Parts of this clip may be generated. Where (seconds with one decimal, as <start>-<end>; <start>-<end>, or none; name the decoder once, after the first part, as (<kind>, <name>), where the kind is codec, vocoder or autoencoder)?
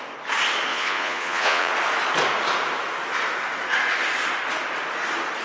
0.7-1.7 (vocoder, Vocos)